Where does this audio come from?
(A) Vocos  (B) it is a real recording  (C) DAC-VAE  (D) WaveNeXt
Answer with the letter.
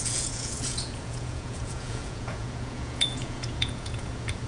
A